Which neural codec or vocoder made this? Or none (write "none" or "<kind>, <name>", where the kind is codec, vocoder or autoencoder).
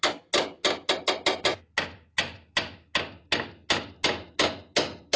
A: none